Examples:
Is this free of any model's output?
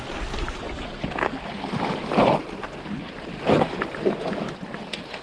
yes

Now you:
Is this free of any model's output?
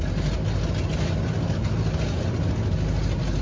yes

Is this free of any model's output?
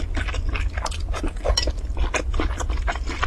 yes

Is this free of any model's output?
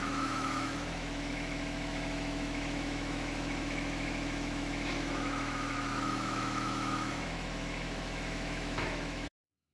no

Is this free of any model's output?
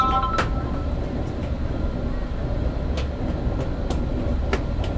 yes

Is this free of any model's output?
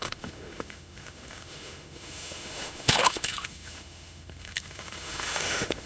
no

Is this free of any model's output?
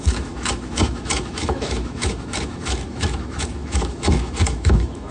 no